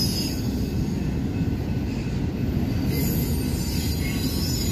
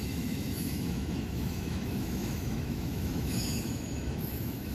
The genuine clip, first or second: first